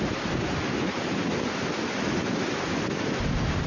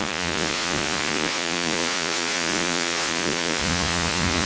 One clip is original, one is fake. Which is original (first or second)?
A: first